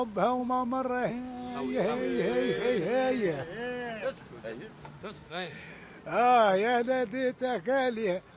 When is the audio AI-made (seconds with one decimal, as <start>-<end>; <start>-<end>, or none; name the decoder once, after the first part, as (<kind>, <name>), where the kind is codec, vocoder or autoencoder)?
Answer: 4.8-5.7 (autoencoder, DAC-VAE)